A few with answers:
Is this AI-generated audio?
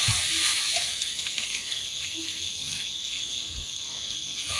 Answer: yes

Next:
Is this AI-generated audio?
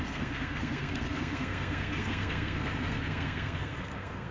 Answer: yes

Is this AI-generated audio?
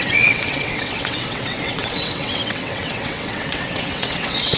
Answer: yes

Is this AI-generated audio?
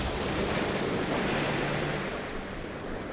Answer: yes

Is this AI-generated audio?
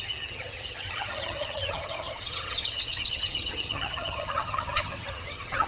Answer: yes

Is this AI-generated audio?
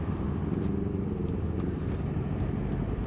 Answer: no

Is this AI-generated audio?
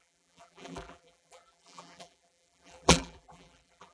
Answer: yes